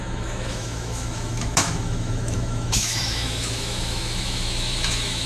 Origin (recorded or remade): remade